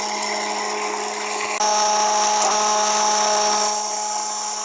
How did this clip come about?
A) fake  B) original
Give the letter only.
B